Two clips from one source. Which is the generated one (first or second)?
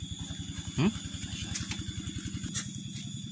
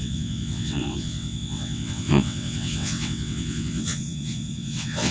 second